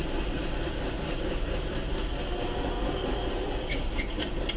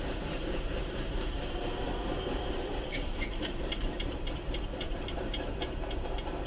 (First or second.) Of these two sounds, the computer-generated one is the second